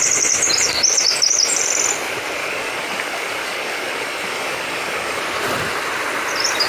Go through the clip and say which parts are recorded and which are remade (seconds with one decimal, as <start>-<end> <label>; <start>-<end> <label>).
0.0-2.4 recorded; 2.4-5.2 remade; 5.2-6.7 recorded